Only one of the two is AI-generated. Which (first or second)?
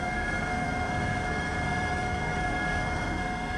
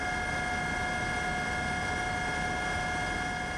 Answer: first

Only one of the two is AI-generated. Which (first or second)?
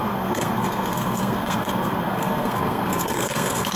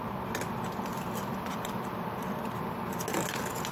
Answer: first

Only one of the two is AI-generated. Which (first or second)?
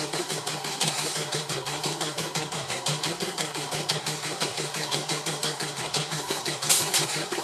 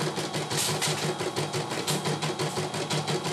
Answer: first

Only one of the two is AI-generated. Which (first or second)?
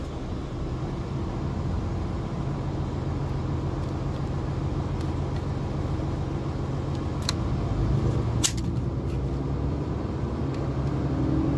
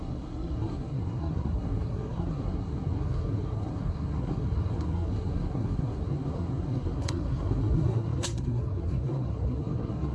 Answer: second